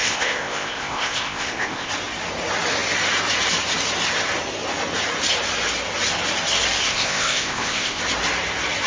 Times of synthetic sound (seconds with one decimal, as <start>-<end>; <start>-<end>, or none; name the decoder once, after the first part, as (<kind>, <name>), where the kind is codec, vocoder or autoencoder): 0.0-1.9 (codec, ZipCodec); 6.9-8.0